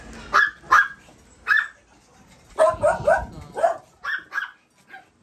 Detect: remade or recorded recorded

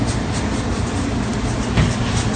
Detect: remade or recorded recorded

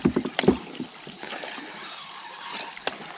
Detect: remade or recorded recorded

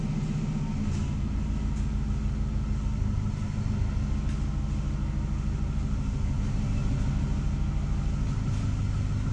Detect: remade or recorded recorded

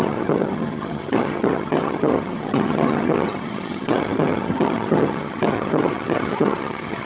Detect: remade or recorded remade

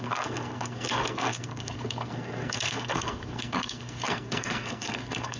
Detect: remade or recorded remade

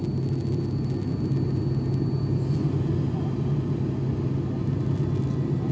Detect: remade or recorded recorded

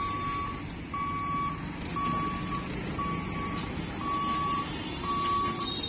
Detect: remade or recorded recorded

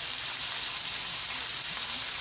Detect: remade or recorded recorded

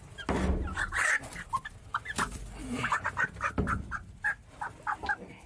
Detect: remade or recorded recorded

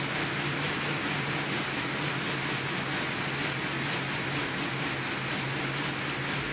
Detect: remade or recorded recorded